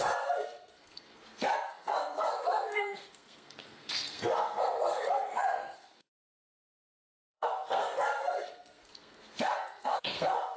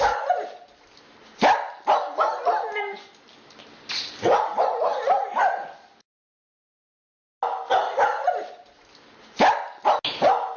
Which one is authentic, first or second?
second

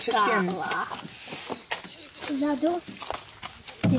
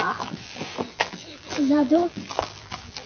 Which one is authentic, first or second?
first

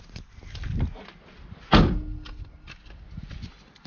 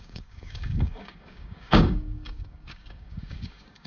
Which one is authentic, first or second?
first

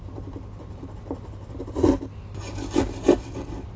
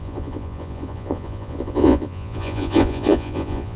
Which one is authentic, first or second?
first